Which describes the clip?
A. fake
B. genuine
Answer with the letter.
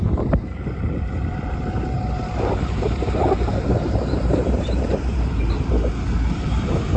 A